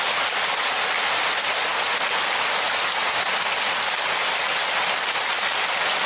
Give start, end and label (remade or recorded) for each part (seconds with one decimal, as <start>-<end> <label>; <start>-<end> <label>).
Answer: 0.0-6.1 recorded